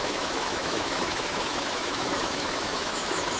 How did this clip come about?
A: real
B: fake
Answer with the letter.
B